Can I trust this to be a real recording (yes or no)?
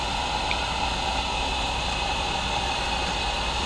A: yes